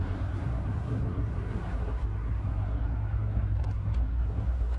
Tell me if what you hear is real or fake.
fake